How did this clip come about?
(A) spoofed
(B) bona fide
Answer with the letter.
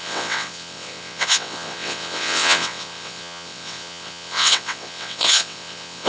A